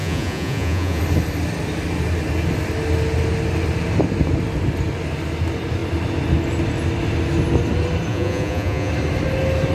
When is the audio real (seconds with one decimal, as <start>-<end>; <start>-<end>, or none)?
1.0-8.1; 8.9-9.7